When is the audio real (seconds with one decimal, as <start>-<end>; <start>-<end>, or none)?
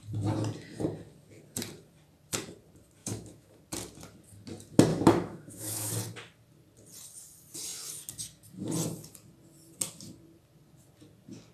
0.0-3.0; 3.6-4.9; 5.9-11.5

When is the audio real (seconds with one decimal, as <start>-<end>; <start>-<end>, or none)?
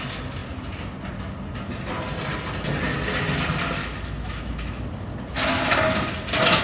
0.0-3.8; 4.8-6.6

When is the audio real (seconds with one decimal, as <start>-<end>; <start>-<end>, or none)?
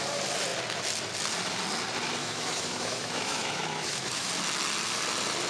0.0-2.2; 4.3-5.5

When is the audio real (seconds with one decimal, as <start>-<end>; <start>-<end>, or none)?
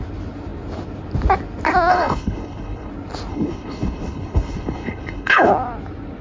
0.0-1.9; 2.9-3.3; 5.5-6.2